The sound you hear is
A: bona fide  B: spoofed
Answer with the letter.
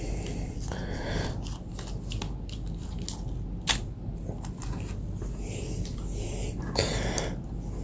A